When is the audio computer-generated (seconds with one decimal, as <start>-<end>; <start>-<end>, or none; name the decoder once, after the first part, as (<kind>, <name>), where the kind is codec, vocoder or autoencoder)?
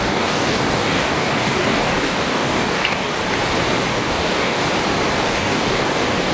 0.0-3.2 (codec, DAC); 3.9-4.6; 5.2-6.3